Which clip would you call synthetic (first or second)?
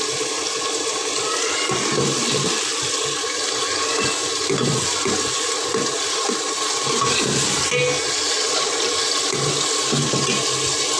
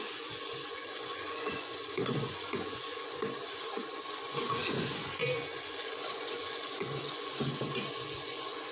second